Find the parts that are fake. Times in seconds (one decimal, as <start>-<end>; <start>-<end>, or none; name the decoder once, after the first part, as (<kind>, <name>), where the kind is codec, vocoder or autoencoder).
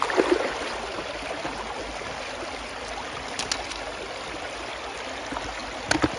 none